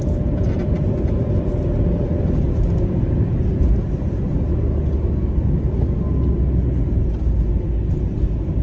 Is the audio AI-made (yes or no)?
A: no